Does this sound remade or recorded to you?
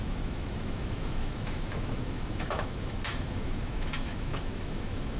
remade